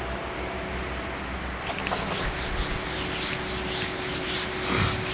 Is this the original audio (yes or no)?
yes